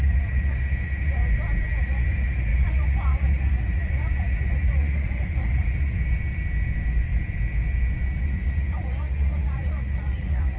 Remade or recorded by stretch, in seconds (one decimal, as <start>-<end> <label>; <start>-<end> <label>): 0.0-1.2 remade; 1.2-1.8 recorded; 1.8-6.0 remade; 6.0-8.2 recorded; 8.2-10.6 remade